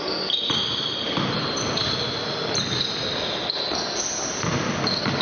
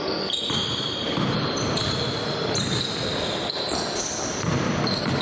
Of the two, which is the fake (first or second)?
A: second